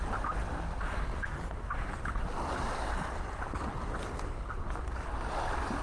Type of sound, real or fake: real